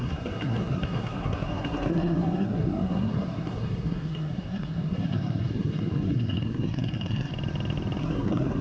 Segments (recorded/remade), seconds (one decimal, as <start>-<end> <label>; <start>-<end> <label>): 0.0-7.3 remade; 7.3-8.0 recorded; 8.0-8.6 remade